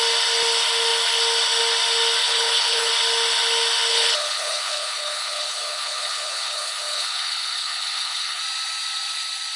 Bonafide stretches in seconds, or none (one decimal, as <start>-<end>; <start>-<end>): 0.0-2.2; 2.9-3.9; 8.4-9.6